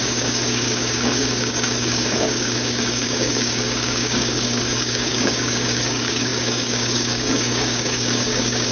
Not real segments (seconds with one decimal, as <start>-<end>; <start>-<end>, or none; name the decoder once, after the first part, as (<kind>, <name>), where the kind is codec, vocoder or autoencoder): 0.0-8.7 (codec, DAC)